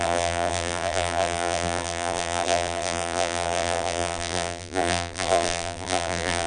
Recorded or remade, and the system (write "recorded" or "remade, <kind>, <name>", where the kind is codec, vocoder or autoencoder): remade, vocoder, BigVGAN v2